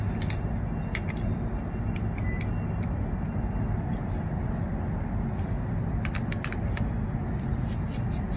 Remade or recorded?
recorded